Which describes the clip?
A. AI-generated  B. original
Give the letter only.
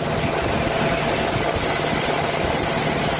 B